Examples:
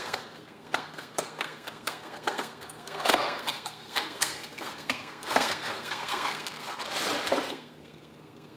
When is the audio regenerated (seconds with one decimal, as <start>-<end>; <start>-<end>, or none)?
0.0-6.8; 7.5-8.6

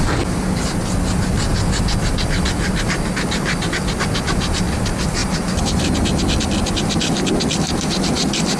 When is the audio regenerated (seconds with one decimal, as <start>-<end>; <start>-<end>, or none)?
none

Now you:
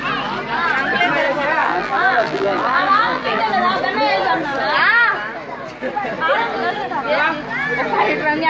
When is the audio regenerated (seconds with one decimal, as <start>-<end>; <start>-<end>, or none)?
1.6-3.4

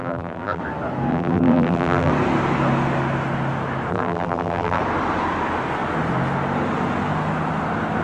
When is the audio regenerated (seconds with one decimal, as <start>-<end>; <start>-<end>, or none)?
0.0-0.6; 1.1-2.1; 3.9-4.8

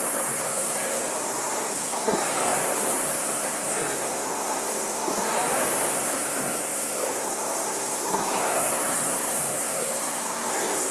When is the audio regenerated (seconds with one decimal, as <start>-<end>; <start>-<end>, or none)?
0.0-1.0; 1.7-5.1; 5.9-10.9

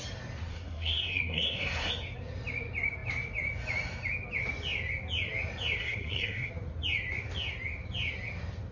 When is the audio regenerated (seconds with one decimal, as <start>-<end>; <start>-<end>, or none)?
0.5-1.9; 5.8-6.5

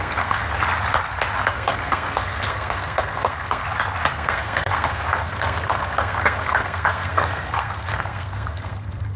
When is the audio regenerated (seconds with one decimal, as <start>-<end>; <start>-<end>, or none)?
0.0-0.6; 1.5-3.6; 4.1-9.2